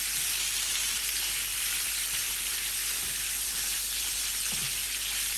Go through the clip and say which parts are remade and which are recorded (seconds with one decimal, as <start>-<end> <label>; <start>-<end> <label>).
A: 0.0-1.5 recorded; 1.5-4.2 remade; 4.2-5.4 recorded